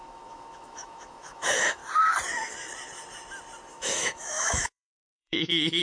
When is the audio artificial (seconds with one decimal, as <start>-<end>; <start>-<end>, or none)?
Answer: 0.0-1.8; 3.7-5.8